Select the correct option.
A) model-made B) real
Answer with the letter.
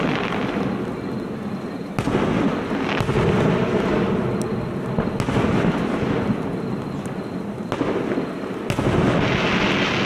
B